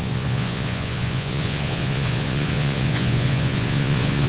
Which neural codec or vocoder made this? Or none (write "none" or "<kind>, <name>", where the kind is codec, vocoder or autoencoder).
vocoder, Vocos